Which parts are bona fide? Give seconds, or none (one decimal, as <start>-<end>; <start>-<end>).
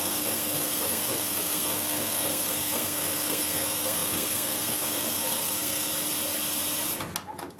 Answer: 5.9-7.6